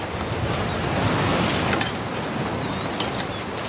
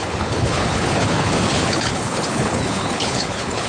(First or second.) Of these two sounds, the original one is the first